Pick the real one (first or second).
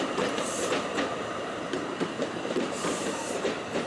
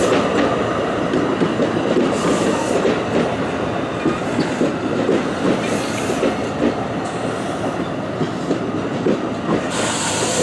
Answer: second